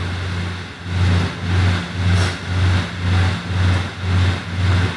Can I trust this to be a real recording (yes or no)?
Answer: yes